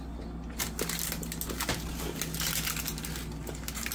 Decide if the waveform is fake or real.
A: real